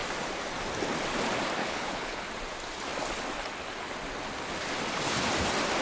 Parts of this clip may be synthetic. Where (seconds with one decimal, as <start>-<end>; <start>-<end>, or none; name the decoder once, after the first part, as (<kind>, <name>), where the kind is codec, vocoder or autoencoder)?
1.6-2.3 (codec, HILCodec)